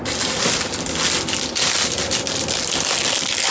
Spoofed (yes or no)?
no